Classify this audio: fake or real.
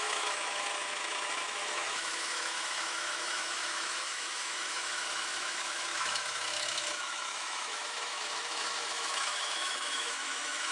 fake